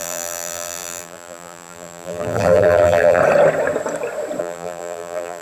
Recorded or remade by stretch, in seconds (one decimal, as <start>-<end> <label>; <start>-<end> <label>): 0.0-3.2 remade; 3.2-4.4 recorded; 4.4-5.4 remade